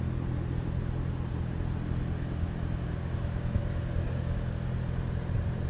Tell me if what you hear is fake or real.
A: real